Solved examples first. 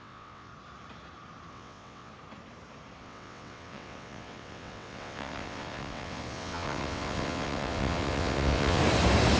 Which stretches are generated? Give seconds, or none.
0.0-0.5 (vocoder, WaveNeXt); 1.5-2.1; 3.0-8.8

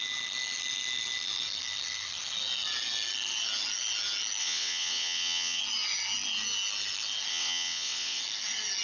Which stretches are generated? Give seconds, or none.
4.4-5.6 (vocoder, WaveNeXt); 7.3-8.2

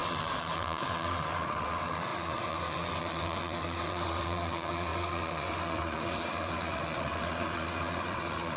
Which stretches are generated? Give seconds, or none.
0.0-8.6 (vocoder, WaveNeXt)

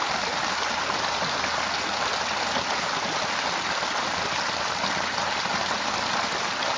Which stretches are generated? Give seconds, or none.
none